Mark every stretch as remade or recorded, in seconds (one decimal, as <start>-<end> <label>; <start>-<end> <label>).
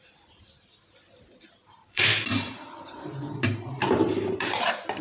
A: 0.0-1.6 recorded; 1.6-4.6 remade; 4.6-5.0 recorded